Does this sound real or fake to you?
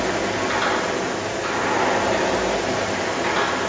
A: real